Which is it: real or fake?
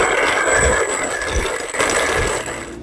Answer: real